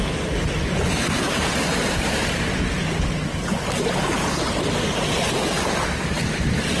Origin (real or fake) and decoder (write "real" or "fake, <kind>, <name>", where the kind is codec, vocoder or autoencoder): real